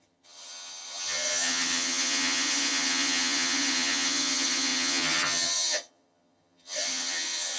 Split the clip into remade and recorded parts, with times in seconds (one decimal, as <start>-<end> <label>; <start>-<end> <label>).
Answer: 0.0-7.6 remade